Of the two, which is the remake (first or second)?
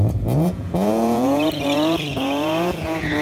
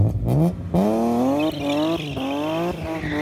first